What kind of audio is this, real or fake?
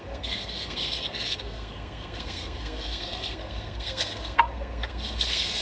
fake